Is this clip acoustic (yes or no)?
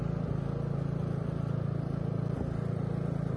yes